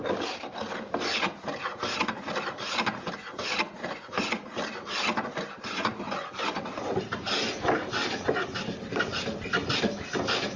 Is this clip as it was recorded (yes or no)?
yes